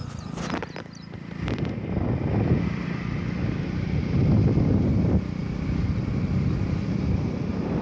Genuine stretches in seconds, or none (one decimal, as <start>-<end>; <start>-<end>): 0.0-7.8